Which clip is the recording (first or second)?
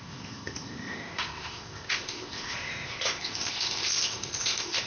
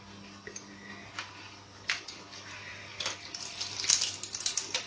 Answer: second